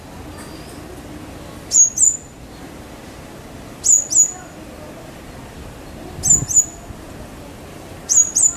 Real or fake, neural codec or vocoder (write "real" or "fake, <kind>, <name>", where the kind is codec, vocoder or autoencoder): real